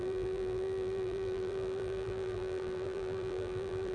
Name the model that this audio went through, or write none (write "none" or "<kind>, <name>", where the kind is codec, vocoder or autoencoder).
vocoder, BigVGAN v2